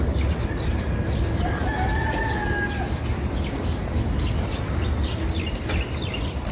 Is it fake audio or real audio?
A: real